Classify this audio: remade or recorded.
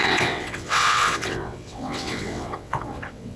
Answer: remade